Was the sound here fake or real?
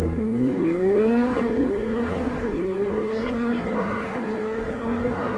fake